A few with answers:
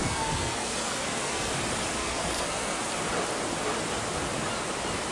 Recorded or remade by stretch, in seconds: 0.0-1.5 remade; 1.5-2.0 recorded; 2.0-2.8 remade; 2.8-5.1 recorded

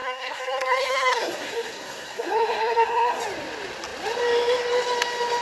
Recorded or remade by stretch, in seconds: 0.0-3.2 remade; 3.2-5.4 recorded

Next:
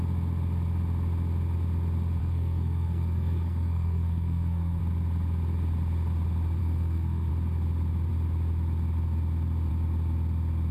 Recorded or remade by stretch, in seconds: 0.0-2.2 recorded; 2.2-4.8 remade; 4.8-6.6 recorded; 6.6-7.3 remade; 7.3-10.7 recorded

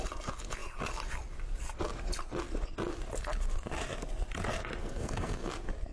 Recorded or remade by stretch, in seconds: 0.0-4.8 recorded; 4.8-5.5 remade; 5.5-5.9 recorded

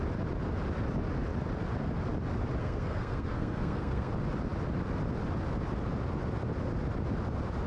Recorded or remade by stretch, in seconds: 0.0-2.6 recorded; 2.6-4.1 remade; 4.1-7.7 recorded